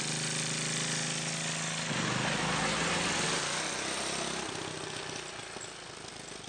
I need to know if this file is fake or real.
real